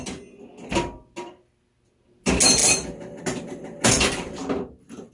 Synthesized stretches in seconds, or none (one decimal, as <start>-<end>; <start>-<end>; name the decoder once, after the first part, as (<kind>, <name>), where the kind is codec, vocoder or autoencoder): none